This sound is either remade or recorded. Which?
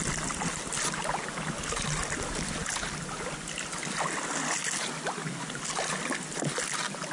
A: recorded